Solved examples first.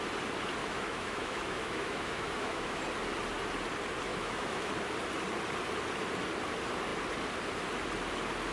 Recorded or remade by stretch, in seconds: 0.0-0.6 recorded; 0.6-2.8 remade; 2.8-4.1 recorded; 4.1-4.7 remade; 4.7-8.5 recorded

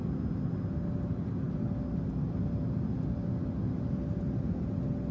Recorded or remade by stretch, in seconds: 0.0-5.1 recorded

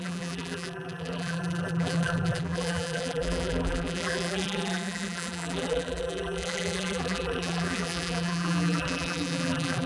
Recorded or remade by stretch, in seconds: 0.0-9.9 remade

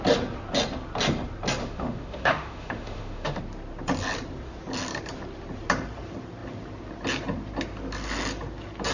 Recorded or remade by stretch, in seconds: 0.0-1.6 recorded; 1.6-3.4 remade; 3.4-8.9 recorded

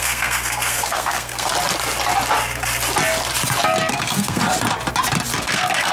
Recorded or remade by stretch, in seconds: 0.0-1.5 remade; 1.5-3.9 recorded; 3.9-4.4 remade; 4.4-5.4 recorded; 5.4-5.9 remade

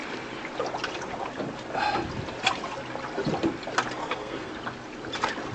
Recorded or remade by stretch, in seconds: 0.0-4.0 recorded; 4.0-4.5 remade; 4.5-5.5 recorded

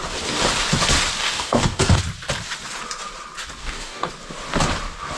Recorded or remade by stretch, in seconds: 0.0-1.2 recorded; 1.2-2.0 remade; 2.0-3.6 recorded; 3.6-4.1 remade; 4.1-5.2 recorded